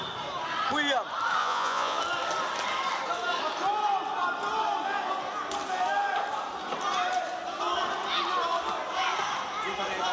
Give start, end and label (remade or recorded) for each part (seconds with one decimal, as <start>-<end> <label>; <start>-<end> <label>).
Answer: 0.0-1.4 recorded; 1.4-2.0 remade; 2.0-10.1 recorded